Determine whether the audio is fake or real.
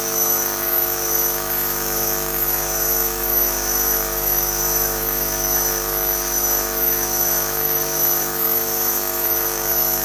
fake